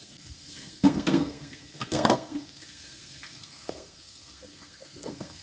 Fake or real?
fake